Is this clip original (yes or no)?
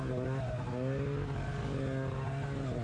yes